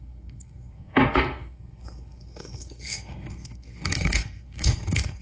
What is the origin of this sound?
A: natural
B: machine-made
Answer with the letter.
B